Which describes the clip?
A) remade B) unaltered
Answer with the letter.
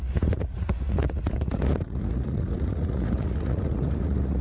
A